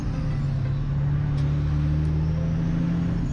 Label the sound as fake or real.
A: real